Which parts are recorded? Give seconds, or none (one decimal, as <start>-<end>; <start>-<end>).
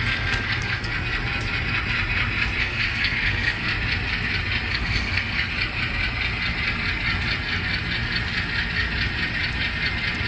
0.9-2.6; 3.7-4.7; 5.5-10.3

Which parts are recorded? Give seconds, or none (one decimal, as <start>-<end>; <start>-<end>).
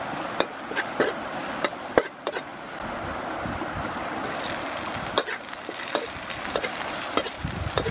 1.4-1.9; 2.5-3.2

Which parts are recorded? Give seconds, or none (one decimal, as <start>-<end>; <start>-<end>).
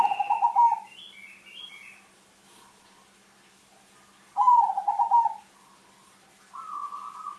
0.0-7.4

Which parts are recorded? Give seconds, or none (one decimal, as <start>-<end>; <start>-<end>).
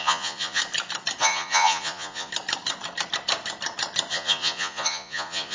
0.6-1.2; 2.3-4.1